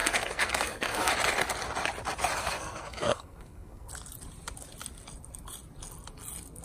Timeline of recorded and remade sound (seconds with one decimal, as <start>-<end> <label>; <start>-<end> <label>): 0.0-1.1 remade; 1.1-2.4 recorded; 2.4-3.9 remade; 3.9-6.6 recorded